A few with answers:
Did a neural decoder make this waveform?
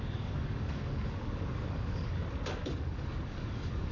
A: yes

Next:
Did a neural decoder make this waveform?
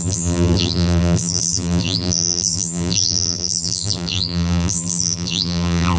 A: yes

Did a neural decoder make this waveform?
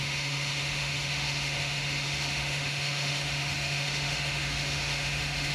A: yes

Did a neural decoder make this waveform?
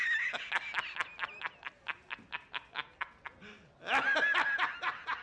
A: no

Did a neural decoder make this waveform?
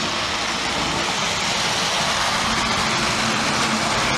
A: no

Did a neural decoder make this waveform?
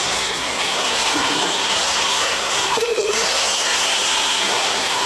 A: yes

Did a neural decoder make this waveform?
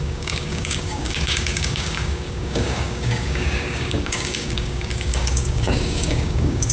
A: yes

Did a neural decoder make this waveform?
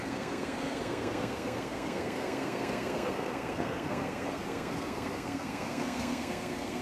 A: yes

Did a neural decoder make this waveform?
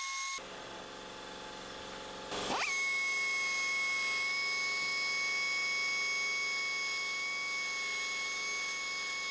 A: no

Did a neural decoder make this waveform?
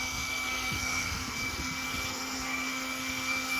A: yes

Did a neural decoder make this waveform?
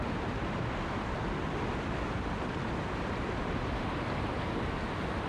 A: no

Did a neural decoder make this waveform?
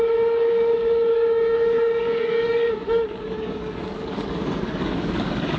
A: yes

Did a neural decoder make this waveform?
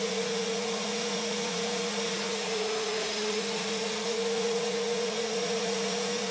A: yes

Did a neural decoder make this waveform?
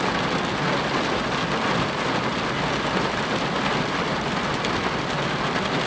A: no